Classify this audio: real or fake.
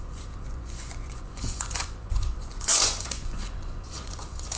fake